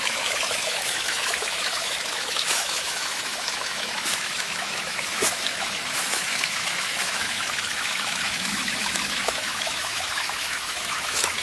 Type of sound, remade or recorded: remade